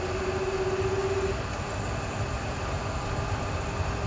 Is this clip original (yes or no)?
yes